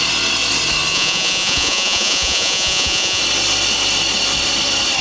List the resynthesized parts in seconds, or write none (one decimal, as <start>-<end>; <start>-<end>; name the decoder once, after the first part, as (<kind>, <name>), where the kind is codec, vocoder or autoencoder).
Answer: 0.9-3.2 (vocoder, Vocos)